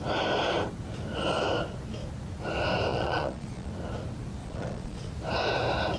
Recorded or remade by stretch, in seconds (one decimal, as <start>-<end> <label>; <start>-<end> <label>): 0.0-2.9 recorded; 2.9-3.7 remade; 3.7-4.4 recorded; 4.4-5.1 remade; 5.1-6.0 recorded